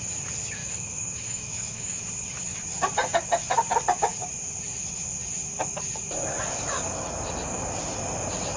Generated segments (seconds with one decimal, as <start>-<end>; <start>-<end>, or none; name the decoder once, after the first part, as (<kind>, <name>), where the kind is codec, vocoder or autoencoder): 0.6-2.0 (autoencoder, DAC-VAE)